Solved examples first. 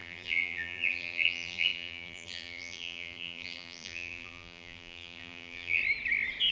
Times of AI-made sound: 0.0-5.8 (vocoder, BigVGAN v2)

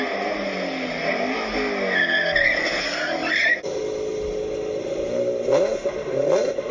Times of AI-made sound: 3.2-3.8 (vocoder, BigVGAN v2)

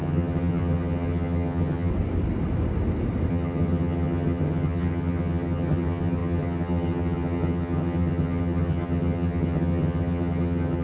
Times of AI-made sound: 0.0-1.9 (vocoder, HiFi-GAN); 3.3-10.8